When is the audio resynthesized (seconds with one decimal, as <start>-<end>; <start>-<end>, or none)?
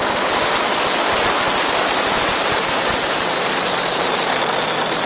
0.0-0.7; 1.8-5.1